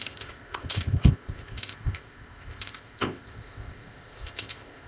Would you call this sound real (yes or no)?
no